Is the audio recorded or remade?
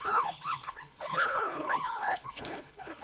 remade